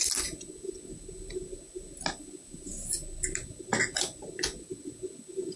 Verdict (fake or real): real